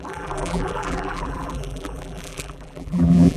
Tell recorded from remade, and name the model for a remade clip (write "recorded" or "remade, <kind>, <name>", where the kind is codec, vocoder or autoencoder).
remade, vocoder, BigVGAN v2